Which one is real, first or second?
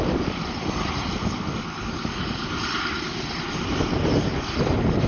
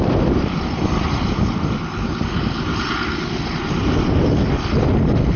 second